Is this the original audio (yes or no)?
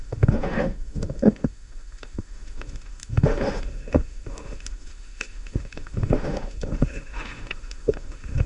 no